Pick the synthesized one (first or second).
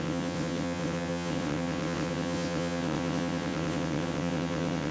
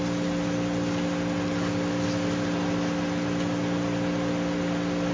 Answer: first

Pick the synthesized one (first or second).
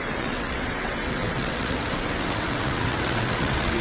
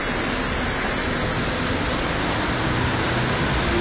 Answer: first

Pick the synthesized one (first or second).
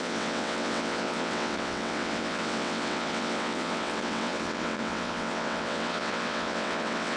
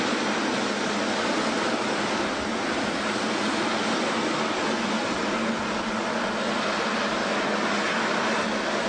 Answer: first